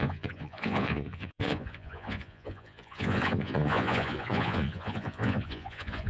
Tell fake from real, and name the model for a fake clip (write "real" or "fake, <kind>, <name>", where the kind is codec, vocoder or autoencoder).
fake, vocoder, Vocos